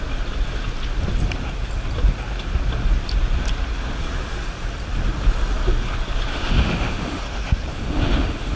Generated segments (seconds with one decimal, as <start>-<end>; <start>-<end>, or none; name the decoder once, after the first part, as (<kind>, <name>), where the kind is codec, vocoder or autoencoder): 6.3-7.2 (autoencoder, DAC-VAE); 7.7-8.6